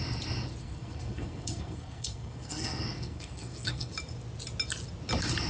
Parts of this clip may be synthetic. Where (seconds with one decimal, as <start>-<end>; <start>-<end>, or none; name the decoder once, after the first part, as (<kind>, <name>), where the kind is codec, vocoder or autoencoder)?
0.6-3.9 (codec, SNAC)

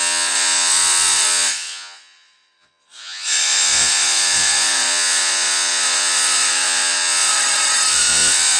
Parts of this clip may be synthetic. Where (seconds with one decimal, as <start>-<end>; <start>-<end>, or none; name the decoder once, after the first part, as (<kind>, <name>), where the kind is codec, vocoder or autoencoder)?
0.0-7.3 (vocoder, Vocos); 7.9-8.6

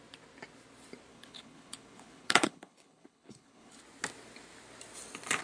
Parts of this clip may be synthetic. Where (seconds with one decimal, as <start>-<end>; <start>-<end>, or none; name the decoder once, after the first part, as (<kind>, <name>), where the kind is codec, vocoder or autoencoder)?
1.1-3.8 (codec, HILCodec)

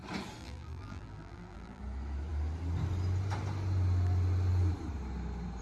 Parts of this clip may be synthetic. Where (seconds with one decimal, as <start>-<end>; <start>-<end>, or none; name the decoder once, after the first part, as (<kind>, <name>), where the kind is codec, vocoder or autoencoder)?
0.4-1.8 (vocoder, BigVGAN v2)

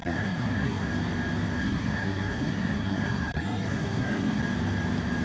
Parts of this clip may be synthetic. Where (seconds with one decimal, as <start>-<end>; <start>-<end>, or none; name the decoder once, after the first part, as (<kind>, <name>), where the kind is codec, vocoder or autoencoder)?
0.0-0.9 (codec, SNAC); 1.6-4.4

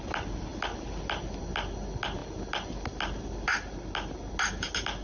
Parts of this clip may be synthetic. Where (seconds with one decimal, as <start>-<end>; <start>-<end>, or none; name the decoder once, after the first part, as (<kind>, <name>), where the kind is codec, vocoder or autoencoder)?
none

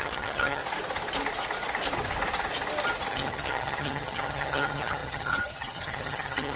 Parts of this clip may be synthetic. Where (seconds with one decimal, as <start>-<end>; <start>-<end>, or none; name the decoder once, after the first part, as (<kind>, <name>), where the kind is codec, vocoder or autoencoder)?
0.0-0.6 (vocoder, HiFi-GAN); 3.1-6.6